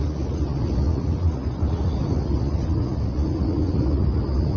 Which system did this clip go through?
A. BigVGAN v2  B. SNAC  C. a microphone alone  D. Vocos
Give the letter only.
D